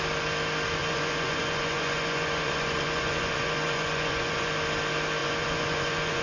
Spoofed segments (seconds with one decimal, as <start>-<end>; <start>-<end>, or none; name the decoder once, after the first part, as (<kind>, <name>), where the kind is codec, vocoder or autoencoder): 0.8-4.5 (vocoder, Vocos); 5.2-6.2